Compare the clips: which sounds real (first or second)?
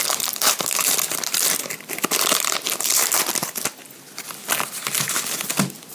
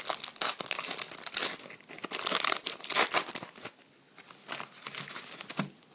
second